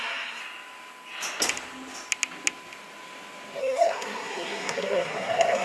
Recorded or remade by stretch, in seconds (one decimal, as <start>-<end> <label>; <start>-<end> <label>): 0.0-0.4 remade; 0.4-3.6 recorded; 3.6-5.6 remade